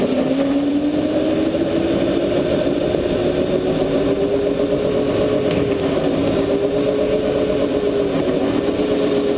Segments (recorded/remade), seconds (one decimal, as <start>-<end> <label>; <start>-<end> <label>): 0.0-9.4 recorded